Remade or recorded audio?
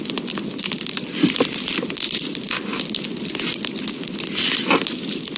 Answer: recorded